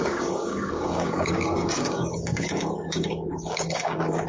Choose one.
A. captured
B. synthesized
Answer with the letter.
B